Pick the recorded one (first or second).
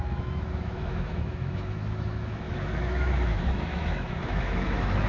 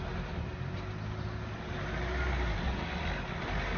second